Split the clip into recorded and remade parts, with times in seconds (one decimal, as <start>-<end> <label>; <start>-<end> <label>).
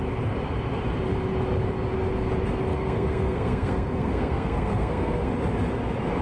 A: 0.0-2.7 recorded; 2.7-5.3 remade; 5.3-6.2 recorded